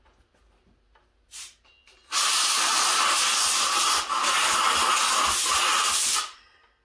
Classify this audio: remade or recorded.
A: recorded